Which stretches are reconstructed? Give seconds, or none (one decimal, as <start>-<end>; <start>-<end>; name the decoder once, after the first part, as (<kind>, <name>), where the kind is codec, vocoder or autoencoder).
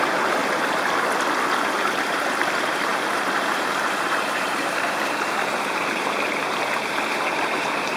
0.0-0.4 (vocoder, BigVGAN v2); 2.1-8.0